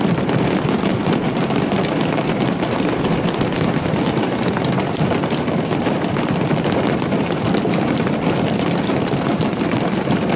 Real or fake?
fake